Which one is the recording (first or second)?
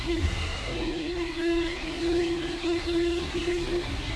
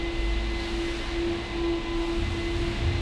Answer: second